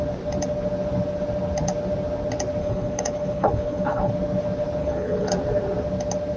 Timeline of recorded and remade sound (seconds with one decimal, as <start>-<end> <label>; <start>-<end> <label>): 0.0-2.6 recorded; 2.6-4.1 remade; 4.1-4.8 recorded; 4.8-5.3 remade; 5.3-6.4 recorded